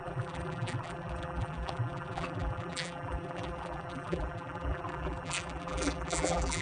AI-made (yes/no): yes